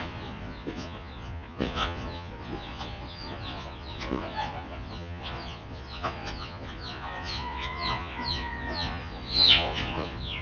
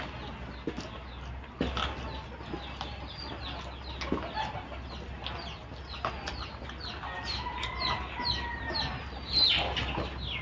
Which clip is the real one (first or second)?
second